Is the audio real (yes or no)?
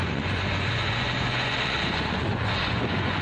no